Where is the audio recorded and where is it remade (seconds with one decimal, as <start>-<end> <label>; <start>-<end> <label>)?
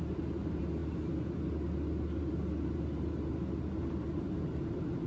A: 0.0-5.1 recorded